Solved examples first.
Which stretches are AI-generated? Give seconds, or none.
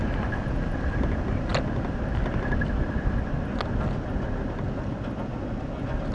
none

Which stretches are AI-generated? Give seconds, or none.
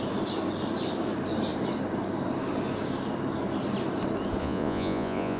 4.4-5.4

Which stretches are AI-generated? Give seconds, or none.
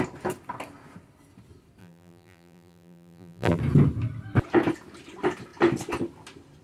1.8-3.6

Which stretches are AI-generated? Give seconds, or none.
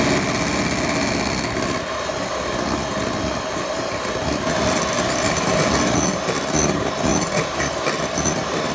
none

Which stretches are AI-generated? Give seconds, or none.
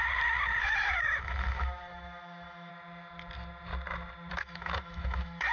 0.6-2.7; 4.3-5.5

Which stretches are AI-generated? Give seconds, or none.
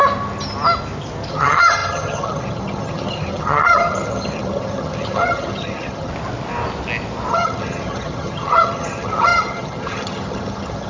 1.3-6.1; 7.3-10.9